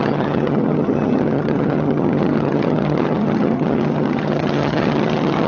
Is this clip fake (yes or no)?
yes